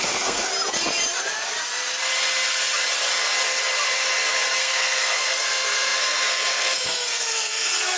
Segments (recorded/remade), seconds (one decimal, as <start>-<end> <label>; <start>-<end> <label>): 0.0-0.5 remade; 0.5-4.6 recorded; 4.6-8.0 remade